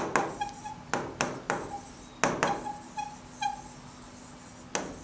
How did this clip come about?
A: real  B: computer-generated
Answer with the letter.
A